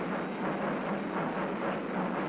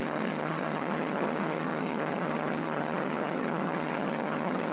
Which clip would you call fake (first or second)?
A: second